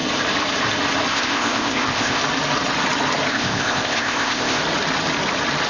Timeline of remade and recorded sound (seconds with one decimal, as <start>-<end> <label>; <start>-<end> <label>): 0.0-1.1 recorded; 1.1-2.2 remade; 2.2-3.3 recorded; 3.3-4.6 remade; 4.6-5.7 recorded